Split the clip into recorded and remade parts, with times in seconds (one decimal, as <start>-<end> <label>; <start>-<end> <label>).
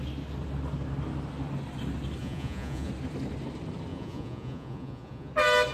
0.0-2.2 recorded; 2.2-2.9 remade; 2.9-3.9 recorded; 3.9-5.3 remade; 5.3-5.7 recorded